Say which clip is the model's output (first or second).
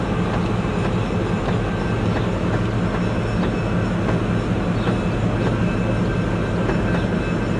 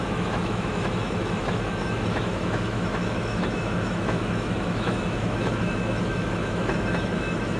second